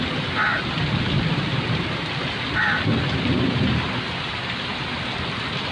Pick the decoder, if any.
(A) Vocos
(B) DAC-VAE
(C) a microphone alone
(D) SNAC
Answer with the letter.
C